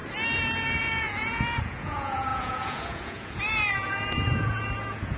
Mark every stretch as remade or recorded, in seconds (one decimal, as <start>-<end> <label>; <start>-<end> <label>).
0.0-0.8 recorded; 0.8-5.2 remade